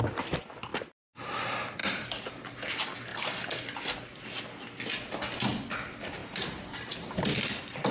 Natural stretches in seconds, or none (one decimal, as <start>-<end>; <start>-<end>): 0.0-0.7; 1.3-1.8; 2.3-3.1; 4.0-6.2